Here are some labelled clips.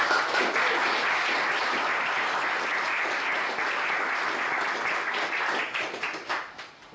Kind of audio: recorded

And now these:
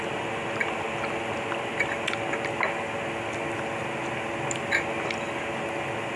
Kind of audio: recorded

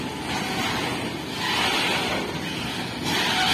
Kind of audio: recorded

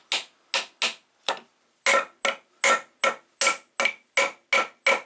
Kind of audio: recorded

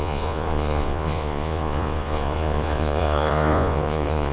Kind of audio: remade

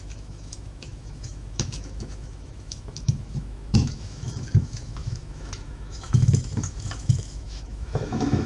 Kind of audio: remade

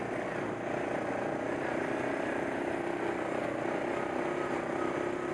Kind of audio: recorded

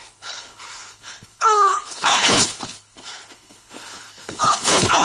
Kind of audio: remade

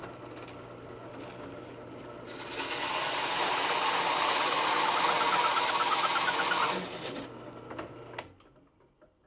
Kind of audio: recorded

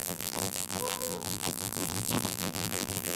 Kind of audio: remade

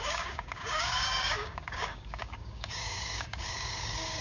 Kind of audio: remade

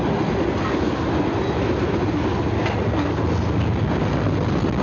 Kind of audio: recorded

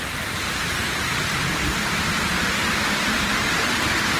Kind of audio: recorded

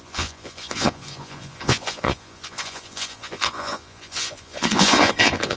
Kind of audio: remade